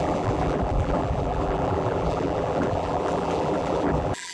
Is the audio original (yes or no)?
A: no